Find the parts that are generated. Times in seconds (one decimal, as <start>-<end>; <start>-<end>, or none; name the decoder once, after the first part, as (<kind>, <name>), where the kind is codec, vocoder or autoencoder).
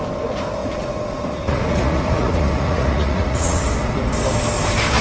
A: 0.6-3.6 (vocoder, Vocos)